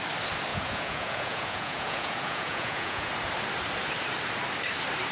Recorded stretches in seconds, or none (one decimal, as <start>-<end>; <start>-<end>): 0.0-0.5; 3.1-5.1